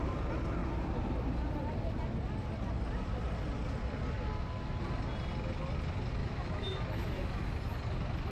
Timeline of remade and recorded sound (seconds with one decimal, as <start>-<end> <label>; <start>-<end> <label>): 0.0-6.2 recorded; 6.2-7.5 remade; 7.5-8.3 recorded